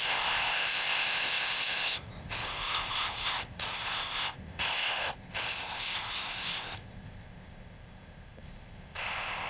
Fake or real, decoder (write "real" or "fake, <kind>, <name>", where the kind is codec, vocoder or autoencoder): fake, codec, ZipCodec